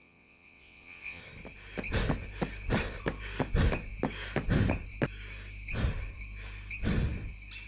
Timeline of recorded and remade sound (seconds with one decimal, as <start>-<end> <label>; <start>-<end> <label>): 0.0-1.2 remade; 1.2-7.7 recorded